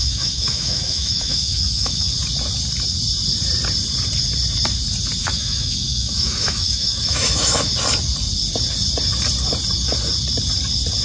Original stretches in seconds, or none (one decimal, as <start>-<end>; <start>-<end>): 2.1-5.2; 7.7-11.0